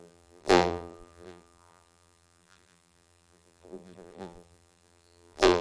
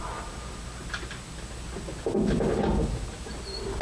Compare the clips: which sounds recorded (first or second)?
second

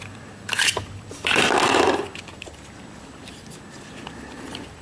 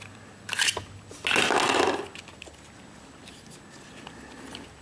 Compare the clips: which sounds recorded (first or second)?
second